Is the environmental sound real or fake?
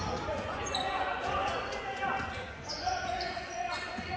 fake